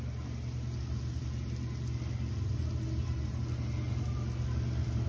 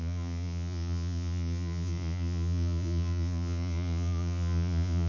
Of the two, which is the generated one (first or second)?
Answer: second